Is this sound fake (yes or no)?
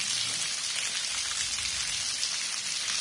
no